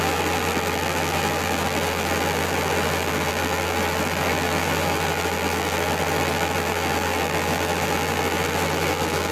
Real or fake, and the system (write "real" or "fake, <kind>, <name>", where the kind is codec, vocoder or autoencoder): fake, vocoder, BigVGAN v2